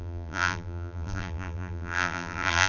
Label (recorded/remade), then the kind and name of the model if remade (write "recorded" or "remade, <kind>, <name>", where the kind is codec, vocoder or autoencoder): remade, vocoder, BigVGAN v2